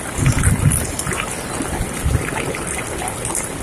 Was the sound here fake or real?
real